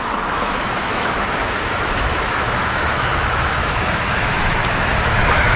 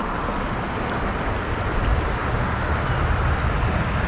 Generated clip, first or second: first